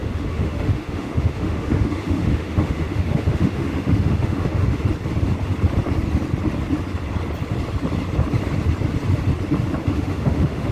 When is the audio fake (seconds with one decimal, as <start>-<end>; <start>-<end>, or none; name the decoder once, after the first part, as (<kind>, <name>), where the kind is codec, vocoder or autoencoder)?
0.0-4.8 (autoencoder, DAC-VAE); 9.8-10.7